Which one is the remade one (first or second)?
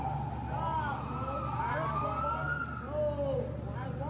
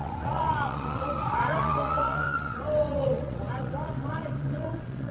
second